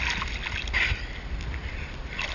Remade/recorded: recorded